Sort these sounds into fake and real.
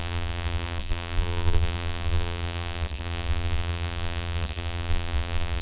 fake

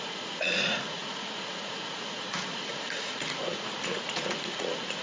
fake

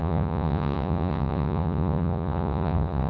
fake